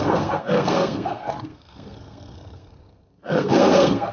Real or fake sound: fake